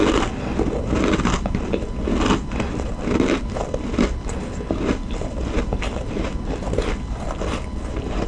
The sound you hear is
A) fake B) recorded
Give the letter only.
B